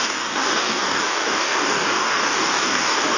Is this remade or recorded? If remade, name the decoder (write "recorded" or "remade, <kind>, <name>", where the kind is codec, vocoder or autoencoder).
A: remade, codec, DAC